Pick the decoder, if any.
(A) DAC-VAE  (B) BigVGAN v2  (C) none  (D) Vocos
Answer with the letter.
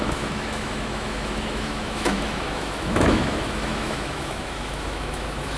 A